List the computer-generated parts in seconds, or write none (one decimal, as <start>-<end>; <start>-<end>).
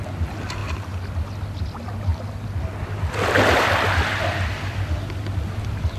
none